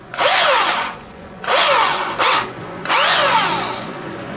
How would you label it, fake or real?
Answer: fake